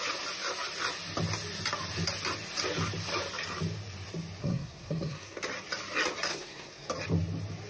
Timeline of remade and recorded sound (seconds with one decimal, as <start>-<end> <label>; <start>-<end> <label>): 0.0-4.4 recorded; 4.4-5.4 remade; 5.4-6.3 recorded; 6.3-6.9 remade; 6.9-7.7 recorded